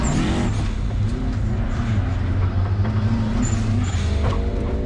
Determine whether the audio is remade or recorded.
recorded